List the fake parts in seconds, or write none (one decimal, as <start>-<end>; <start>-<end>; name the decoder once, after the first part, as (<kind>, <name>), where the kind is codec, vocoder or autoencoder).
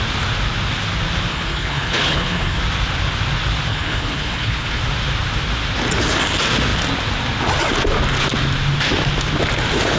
1.3-2.6 (codec, HILCodec); 3.7-4.8